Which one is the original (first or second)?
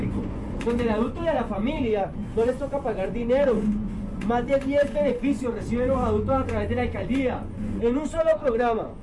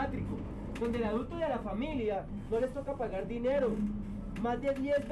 second